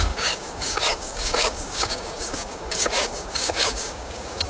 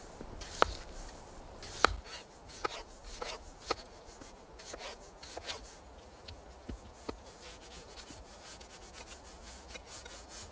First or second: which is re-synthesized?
first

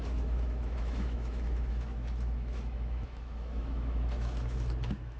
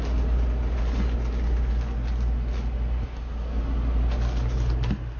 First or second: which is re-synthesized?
first